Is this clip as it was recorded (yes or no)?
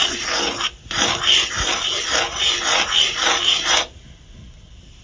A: yes